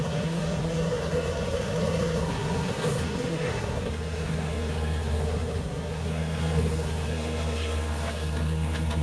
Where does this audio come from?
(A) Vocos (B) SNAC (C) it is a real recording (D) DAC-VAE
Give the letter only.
B